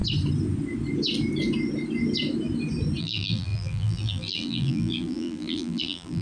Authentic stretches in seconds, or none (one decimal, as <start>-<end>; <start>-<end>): 0.0-3.0